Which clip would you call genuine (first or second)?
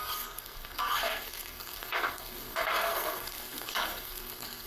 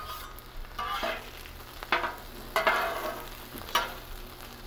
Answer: second